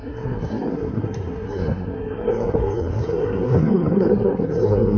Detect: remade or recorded remade